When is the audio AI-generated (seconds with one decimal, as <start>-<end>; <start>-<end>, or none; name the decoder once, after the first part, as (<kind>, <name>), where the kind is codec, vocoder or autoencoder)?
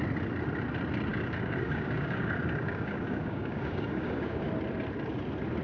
1.1-4.5 (codec, DAC)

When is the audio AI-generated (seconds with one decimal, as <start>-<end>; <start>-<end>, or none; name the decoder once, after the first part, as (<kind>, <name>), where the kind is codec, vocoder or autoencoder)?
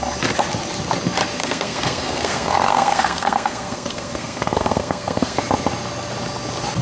1.4-5.4 (codec, SNAC)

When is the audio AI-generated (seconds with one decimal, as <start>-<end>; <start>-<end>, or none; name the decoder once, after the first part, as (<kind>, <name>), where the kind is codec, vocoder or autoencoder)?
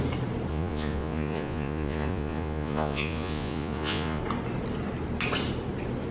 0.5-4.2 (vocoder, Vocos)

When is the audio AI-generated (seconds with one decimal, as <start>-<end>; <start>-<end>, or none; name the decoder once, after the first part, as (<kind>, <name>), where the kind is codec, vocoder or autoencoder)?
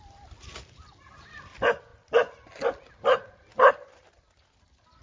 none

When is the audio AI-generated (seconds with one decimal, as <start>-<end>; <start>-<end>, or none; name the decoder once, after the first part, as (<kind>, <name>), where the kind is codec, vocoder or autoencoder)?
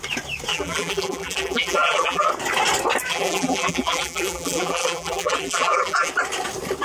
0.5-2.3 (vocoder, BigVGAN v2); 3.1-6.1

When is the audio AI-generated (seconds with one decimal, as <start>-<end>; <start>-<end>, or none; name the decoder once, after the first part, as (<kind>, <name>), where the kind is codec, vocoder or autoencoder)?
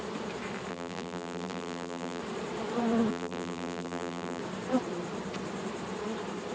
0.7-2.2 (vocoder, BigVGAN v2); 3.1-4.4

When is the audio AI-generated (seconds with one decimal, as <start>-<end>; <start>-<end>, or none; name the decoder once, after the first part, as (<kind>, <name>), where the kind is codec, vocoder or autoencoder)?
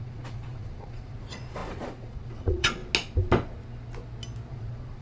0.0-2.8 (vocoder, Vocos); 4.5-5.0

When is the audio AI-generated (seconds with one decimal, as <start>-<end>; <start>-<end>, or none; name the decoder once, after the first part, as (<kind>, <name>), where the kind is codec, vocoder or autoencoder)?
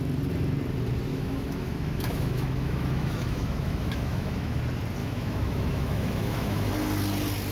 1.1-4.6 (autoencoder, DAC-VAE); 5.0-6.7